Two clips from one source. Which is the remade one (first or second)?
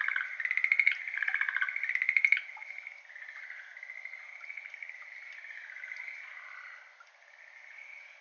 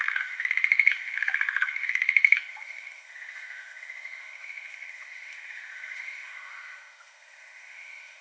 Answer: second